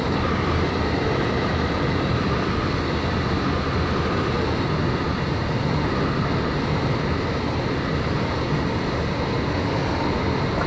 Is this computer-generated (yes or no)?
no